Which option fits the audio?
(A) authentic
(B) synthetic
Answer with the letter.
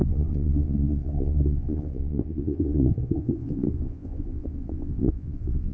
B